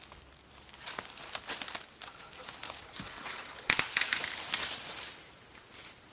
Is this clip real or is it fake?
real